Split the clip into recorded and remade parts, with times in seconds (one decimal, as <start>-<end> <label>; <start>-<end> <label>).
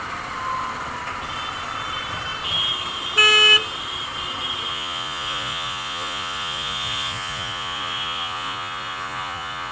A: 0.0-4.7 recorded; 4.7-9.7 remade